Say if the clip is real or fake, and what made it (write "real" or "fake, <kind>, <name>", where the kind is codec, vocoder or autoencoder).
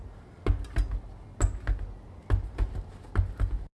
real